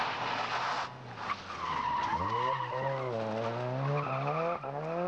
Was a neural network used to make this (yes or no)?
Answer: no